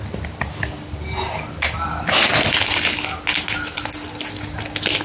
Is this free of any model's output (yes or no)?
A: yes